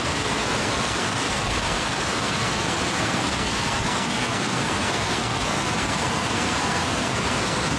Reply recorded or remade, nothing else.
remade